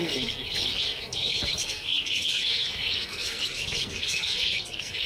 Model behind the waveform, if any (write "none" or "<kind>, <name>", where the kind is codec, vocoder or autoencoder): codec, SNAC